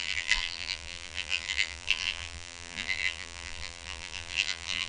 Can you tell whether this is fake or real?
fake